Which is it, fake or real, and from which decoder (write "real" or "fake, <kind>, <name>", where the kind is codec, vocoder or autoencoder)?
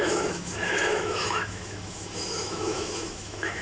fake, autoencoder, DAC-VAE